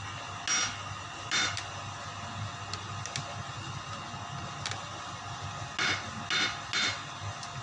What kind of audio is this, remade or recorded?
recorded